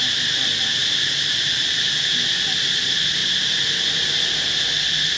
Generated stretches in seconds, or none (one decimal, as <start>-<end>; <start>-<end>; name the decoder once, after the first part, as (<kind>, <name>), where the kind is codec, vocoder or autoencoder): 0.8-1.9 (vocoder, BigVGAN v2)